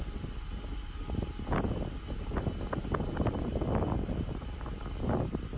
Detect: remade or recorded recorded